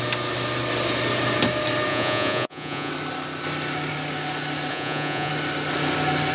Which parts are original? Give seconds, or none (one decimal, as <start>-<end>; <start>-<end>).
0.0-1.9; 2.9-4.7; 5.3-6.3